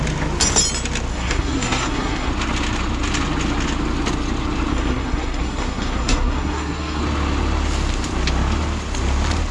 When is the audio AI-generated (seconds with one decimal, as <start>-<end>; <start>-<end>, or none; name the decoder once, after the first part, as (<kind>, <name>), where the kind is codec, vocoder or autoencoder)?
1.1-2.3 (codec, SNAC); 4.7-7.0